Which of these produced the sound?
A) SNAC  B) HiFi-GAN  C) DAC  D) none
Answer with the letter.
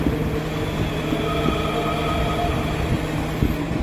D